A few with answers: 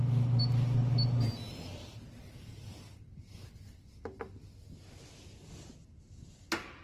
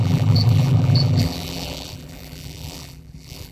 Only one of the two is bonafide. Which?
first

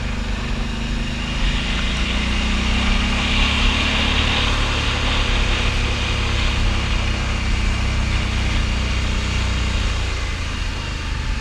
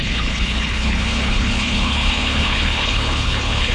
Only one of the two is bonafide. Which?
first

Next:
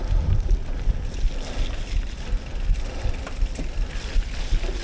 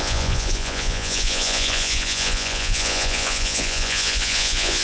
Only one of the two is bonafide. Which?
first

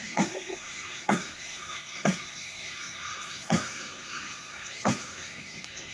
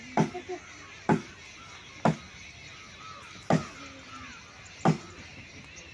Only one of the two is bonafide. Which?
second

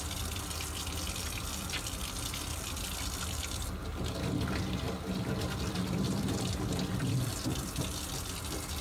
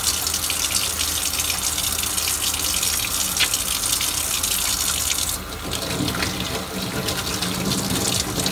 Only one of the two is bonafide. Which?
second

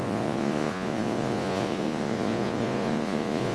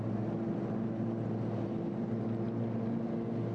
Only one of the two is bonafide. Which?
second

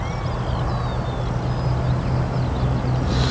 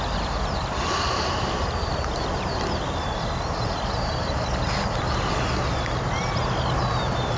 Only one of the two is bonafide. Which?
first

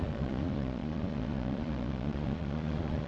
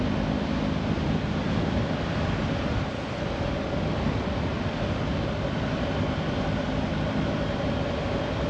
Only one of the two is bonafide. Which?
second